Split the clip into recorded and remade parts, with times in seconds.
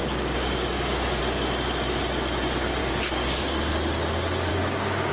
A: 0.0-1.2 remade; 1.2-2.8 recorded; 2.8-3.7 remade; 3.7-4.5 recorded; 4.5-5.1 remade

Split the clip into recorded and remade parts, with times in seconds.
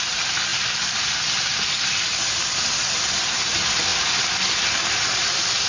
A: 0.0-5.7 recorded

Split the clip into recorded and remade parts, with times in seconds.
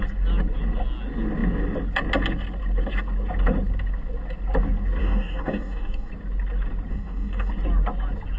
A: 0.0-5.0 recorded; 5.0-6.1 remade; 6.1-6.9 recorded; 6.9-7.5 remade; 7.5-8.4 recorded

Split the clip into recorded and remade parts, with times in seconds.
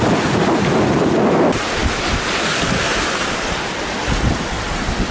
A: 0.0-2.9 recorded; 2.9-3.8 remade; 3.8-5.1 recorded